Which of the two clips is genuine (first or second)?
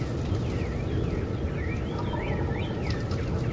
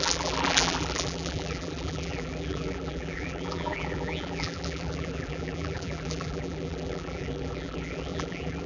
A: first